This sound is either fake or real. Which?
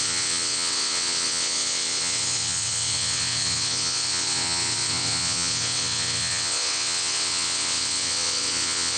fake